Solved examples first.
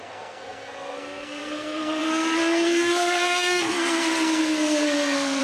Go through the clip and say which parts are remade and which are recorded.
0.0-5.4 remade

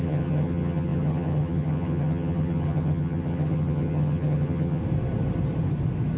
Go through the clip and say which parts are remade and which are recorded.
0.0-4.8 remade; 4.8-6.2 recorded

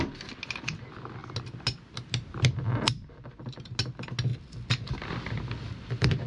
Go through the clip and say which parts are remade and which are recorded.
0.0-6.3 recorded

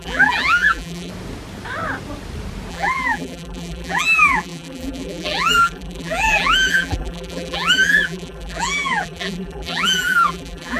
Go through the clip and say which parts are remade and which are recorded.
0.0-1.1 remade; 1.1-2.7 recorded; 2.7-10.8 remade

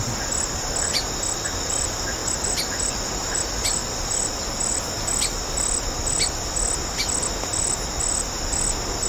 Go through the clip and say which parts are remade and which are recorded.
0.0-9.1 recorded

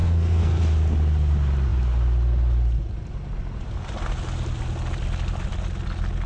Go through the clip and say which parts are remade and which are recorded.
0.0-0.6 remade; 0.6-6.3 recorded

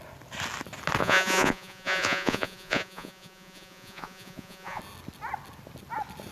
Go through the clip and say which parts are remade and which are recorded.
0.0-1.0 recorded; 1.0-4.8 remade; 4.8-6.3 recorded

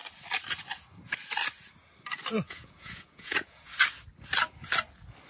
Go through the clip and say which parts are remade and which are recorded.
0.0-2.5 recorded; 2.5-3.7 remade; 3.7-5.3 recorded